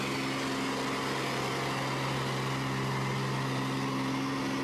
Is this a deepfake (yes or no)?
no